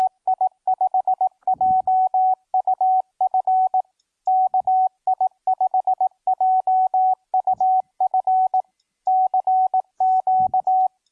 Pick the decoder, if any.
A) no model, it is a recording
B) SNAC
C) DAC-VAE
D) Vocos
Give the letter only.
A